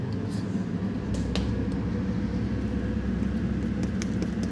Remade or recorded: recorded